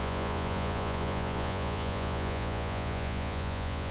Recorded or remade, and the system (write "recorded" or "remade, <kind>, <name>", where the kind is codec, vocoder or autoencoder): remade, vocoder, Vocos